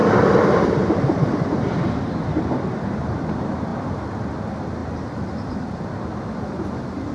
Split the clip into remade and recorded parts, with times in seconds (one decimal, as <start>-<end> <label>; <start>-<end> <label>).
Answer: 0.0-2.4 remade; 2.4-7.1 recorded